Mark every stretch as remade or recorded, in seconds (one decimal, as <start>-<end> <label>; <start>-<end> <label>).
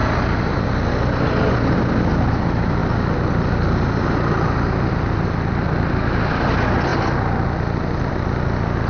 0.0-8.9 recorded